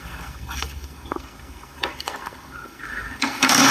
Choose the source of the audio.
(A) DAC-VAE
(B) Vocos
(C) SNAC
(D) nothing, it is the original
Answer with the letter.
C